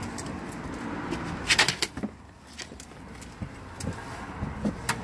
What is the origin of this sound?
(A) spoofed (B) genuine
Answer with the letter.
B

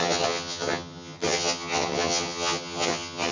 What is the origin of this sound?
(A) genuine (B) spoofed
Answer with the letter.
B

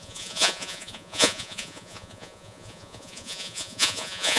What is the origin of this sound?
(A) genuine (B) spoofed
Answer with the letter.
B